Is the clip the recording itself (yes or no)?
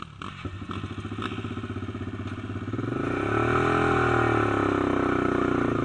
yes